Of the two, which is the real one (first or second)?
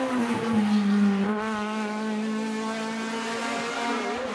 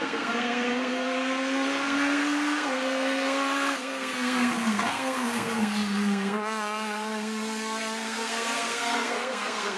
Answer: first